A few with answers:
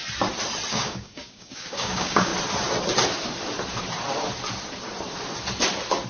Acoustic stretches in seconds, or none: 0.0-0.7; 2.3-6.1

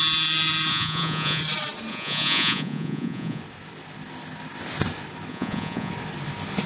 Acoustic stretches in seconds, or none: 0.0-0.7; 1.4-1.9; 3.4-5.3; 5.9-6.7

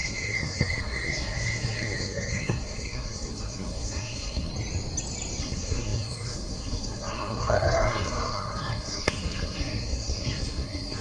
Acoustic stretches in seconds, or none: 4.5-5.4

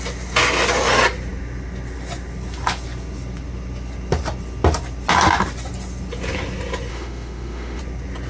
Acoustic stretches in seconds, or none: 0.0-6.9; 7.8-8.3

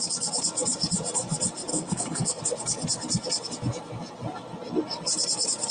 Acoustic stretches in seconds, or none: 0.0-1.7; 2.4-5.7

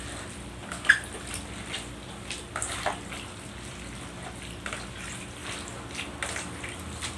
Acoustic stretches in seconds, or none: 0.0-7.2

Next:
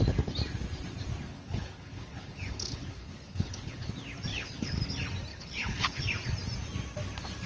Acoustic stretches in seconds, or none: 0.0-1.3; 3.9-4.3; 4.8-5.3; 6.0-7.5

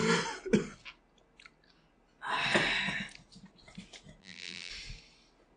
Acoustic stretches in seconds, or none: 0.0-4.2; 4.7-5.6